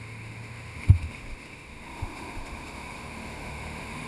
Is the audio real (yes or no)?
no